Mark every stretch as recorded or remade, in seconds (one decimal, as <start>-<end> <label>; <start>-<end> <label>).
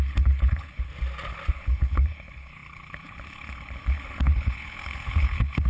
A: 0.0-0.9 remade; 0.9-1.5 recorded; 1.5-5.7 remade